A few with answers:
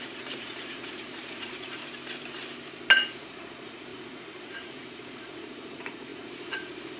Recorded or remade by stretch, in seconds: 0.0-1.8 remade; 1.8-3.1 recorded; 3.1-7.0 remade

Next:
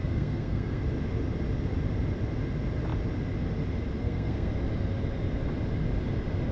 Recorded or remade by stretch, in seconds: 0.0-0.8 remade; 0.8-4.0 recorded; 4.0-4.5 remade; 4.5-6.5 recorded

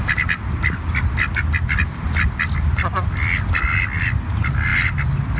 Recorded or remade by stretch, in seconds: 0.0-5.4 recorded

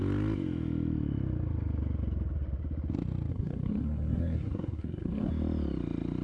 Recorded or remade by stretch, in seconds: 0.0-3.3 recorded; 3.3-5.3 remade; 5.3-6.2 recorded

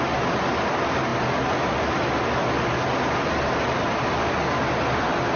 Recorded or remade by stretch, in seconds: 0.0-5.4 recorded

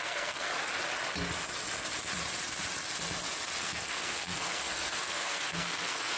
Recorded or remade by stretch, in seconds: 0.0-0.7 remade; 0.7-3.6 recorded; 3.6-6.2 remade

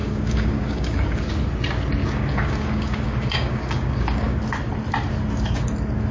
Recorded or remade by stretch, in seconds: 0.0-1.3 remade; 1.3-2.0 recorded; 2.0-4.4 remade; 4.4-6.1 recorded